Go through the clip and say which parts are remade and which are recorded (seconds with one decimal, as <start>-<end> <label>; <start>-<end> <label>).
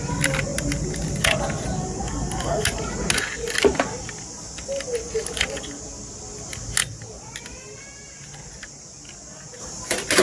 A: 0.0-10.2 recorded